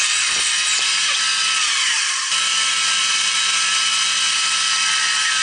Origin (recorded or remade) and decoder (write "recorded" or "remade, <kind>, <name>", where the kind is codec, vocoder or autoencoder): recorded